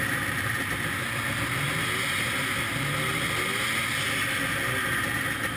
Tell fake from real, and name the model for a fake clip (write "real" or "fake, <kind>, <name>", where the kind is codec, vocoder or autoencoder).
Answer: real